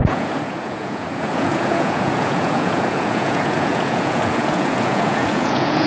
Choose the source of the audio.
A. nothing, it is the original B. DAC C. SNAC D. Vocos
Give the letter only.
D